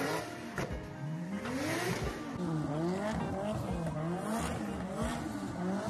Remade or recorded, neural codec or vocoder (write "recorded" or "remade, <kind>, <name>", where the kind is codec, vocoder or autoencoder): recorded